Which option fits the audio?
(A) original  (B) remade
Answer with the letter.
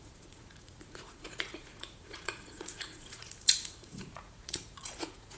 B